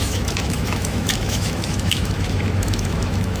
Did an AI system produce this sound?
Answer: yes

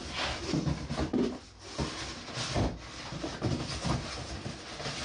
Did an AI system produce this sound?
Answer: no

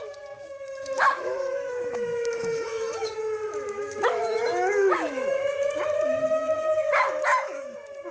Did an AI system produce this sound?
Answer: yes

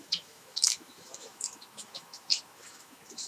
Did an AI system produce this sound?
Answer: yes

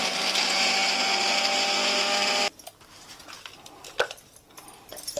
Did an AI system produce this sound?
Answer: no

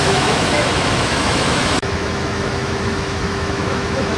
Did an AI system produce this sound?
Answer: yes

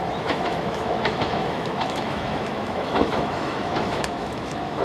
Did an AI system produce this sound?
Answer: yes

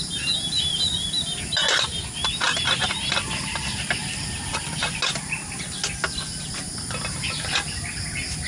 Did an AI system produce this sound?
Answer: no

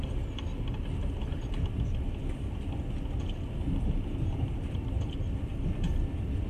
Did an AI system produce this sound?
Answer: no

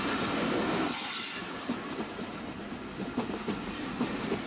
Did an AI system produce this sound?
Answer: no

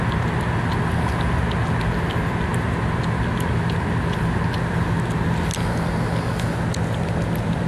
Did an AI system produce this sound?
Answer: no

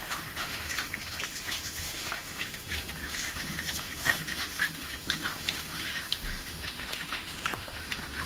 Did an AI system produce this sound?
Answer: yes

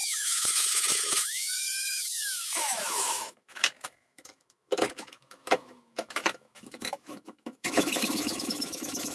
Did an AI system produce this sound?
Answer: yes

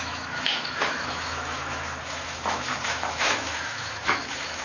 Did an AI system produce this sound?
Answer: yes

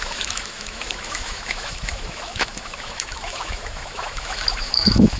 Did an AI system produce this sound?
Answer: yes